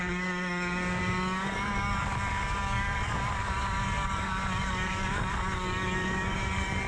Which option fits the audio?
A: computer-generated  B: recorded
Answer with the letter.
A